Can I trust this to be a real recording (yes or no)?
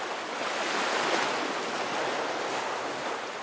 yes